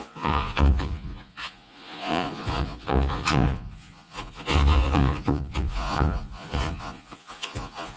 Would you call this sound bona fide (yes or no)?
no